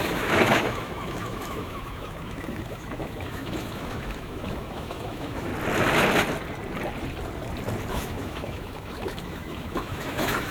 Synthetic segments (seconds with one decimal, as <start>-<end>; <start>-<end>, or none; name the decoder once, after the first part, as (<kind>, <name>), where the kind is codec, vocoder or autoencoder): 0.0-5.5 (autoencoder, DAC-VAE); 7.9-10.5